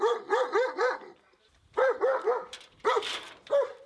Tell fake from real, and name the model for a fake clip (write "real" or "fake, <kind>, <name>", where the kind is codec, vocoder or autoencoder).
fake, vocoder, BigVGAN v2